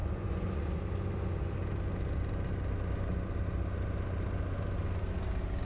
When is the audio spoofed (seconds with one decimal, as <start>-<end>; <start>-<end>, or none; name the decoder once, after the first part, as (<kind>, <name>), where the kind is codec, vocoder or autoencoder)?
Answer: 0.0-0.8 (vocoder, Vocos)